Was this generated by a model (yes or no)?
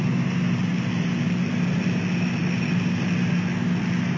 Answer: no